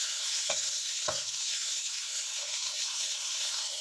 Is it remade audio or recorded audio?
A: remade